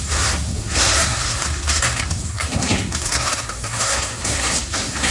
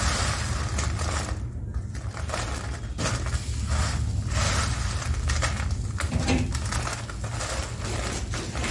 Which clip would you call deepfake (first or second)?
first